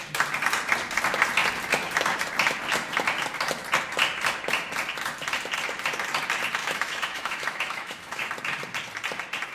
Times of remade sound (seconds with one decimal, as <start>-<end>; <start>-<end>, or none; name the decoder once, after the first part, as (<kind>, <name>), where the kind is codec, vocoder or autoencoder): 6.6-8.3 (autoencoder, DAC-VAE)